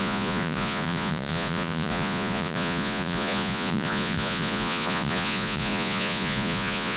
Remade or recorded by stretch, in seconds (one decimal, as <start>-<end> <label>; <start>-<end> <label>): 0.0-7.0 remade